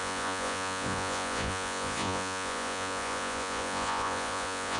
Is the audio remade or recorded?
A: remade